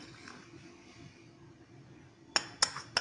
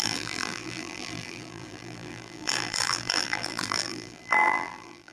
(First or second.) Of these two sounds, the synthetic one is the second